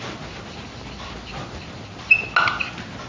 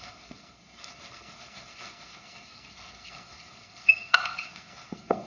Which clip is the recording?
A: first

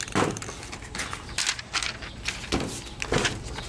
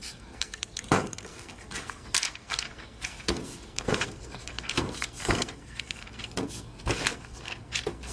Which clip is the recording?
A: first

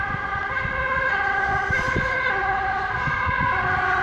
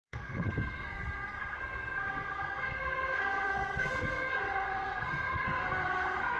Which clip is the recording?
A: first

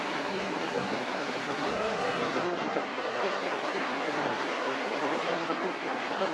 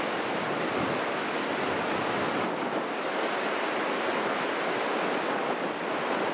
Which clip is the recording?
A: second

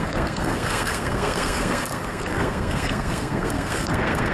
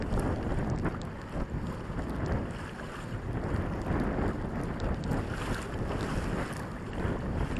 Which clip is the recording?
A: second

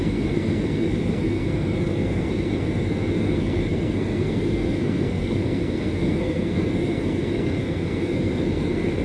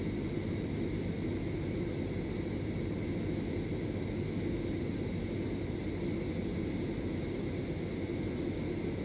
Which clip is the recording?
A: second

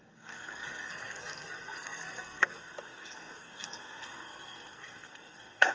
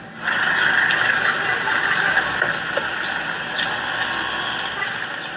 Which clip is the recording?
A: second